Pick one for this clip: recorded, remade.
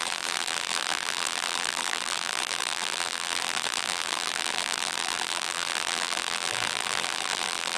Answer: remade